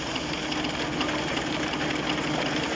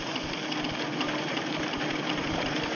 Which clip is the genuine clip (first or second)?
first